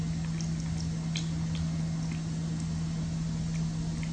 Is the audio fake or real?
real